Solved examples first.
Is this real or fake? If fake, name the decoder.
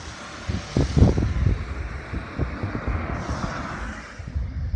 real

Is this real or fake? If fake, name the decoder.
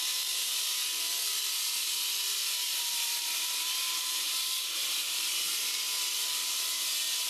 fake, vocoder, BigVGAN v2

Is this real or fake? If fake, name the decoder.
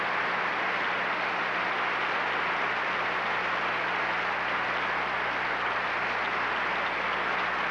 real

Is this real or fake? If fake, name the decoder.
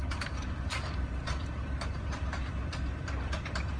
fake, vocoder, BigVGAN v2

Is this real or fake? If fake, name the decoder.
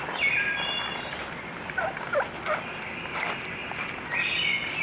real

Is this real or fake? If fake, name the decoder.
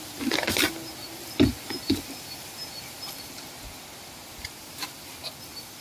real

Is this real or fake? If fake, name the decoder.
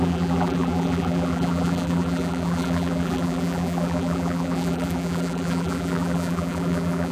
fake, vocoder, BigVGAN v2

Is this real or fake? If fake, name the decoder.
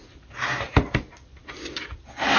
real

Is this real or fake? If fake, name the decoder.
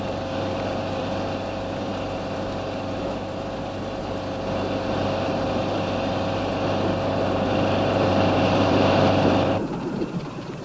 fake, vocoder, BigVGAN v2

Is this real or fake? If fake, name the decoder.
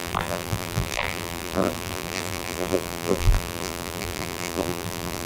fake, vocoder, BigVGAN v2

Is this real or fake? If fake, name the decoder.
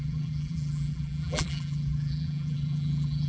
fake, vocoder, BigVGAN v2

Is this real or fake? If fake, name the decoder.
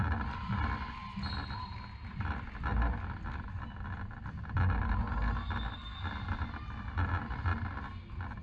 real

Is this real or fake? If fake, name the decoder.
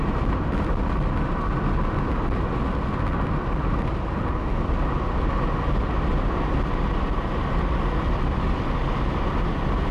real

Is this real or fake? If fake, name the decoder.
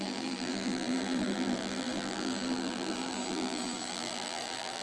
fake, vocoder, BigVGAN v2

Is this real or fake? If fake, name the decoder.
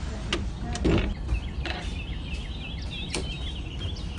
real